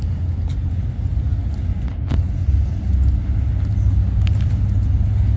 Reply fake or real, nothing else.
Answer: real